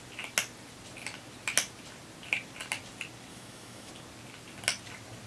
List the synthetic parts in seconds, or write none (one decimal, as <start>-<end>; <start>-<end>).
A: 3.3-3.9